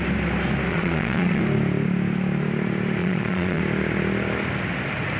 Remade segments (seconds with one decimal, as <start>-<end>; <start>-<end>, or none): 0.7-1.4; 3.0-3.6